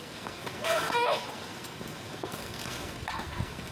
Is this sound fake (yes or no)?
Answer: yes